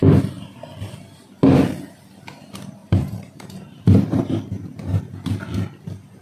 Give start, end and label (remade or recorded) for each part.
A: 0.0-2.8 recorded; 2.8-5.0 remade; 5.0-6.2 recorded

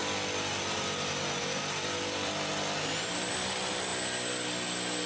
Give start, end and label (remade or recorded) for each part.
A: 0.0-1.6 recorded; 1.6-2.5 remade; 2.5-3.0 recorded; 3.0-3.9 remade; 3.9-5.1 recorded

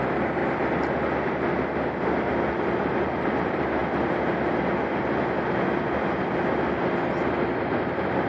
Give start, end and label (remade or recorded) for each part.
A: 0.0-0.4 remade; 0.4-2.5 recorded; 2.5-3.8 remade; 3.8-7.8 recorded; 7.8-8.3 remade

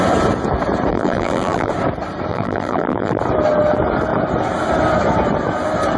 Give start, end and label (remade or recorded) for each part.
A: 0.0-0.9 recorded; 0.9-1.7 remade; 1.7-2.3 recorded; 2.3-3.2 remade; 3.2-6.0 recorded

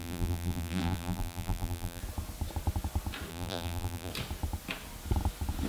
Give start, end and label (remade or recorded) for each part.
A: 0.0-2.0 remade; 2.0-3.3 recorded; 3.3-4.1 remade; 4.1-5.7 recorded